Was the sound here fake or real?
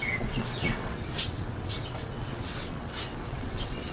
fake